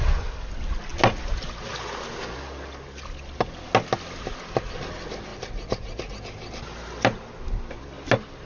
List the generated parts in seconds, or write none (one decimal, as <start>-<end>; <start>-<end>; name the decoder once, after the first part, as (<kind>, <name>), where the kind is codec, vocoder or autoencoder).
5.3-6.1 (vocoder, BigVGAN v2)